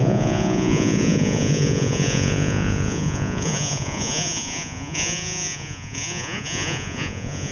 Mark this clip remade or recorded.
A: remade